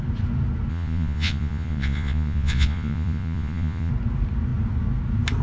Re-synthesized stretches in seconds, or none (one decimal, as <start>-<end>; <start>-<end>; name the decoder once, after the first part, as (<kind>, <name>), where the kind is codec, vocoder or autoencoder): 0.7-3.9 (vocoder, Vocos)